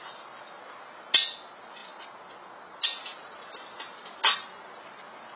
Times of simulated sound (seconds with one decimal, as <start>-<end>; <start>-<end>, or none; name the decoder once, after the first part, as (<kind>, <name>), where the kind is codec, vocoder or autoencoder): none